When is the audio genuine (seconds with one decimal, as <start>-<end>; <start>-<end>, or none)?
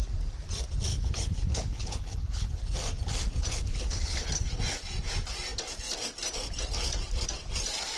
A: 0.0-0.9; 2.6-3.7; 4.6-8.0